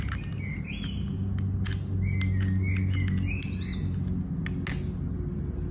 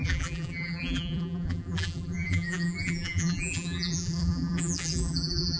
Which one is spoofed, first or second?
second